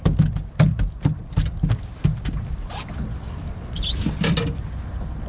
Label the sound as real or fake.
real